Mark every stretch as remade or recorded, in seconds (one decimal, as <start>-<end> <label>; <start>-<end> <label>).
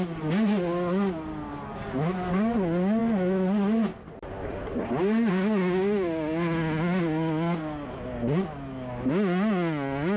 0.0-10.2 recorded